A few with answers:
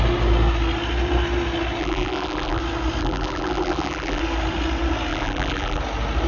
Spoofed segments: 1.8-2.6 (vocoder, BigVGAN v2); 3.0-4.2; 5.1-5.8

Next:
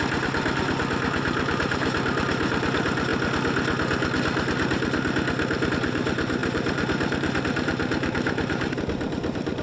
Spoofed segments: 0.0-3.1 (vocoder, BigVGAN v2); 5.7-9.6

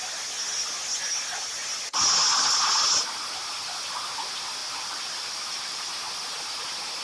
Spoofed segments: 4.6-5.9 (vocoder, BigVGAN v2)

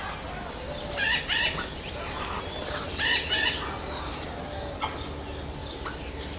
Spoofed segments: 5.6-6.4 (vocoder, BigVGAN v2)